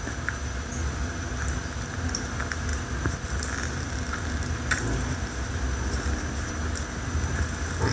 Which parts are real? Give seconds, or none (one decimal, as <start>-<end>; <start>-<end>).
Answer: 0.0-7.9